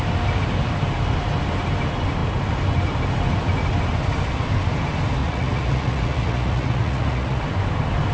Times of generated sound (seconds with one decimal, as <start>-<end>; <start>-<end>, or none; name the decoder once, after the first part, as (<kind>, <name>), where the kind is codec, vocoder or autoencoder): 5.2-7.4 (vocoder, Vocos)

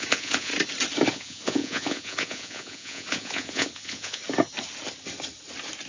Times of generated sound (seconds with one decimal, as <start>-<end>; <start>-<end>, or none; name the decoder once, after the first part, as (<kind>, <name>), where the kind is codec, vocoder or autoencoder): 0.0-0.5 (vocoder, Vocos); 1.1-4.2

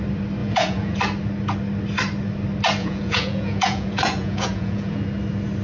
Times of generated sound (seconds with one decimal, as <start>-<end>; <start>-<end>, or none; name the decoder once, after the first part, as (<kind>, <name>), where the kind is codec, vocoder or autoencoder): 0.4-1.0 (vocoder, Vocos); 2.8-5.0

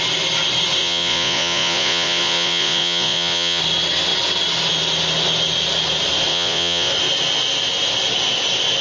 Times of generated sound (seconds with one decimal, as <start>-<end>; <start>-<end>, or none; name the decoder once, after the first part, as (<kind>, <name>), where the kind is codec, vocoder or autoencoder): 0.8-3.6 (vocoder, Vocos); 6.3-6.9

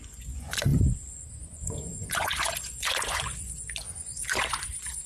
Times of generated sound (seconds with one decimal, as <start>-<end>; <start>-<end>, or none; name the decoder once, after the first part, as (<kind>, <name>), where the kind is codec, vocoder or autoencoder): 0.0-5.1 (vocoder, Vocos)

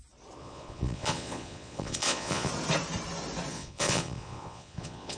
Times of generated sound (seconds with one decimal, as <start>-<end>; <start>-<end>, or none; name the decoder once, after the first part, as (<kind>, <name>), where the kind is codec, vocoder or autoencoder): 0.4-2.5 (vocoder, Vocos); 3.5-5.2

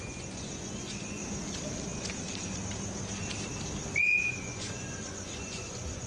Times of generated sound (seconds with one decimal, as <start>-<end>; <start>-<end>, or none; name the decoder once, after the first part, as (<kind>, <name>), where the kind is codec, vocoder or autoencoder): 0.0-1.2 (vocoder, Vocos); 4.0-6.1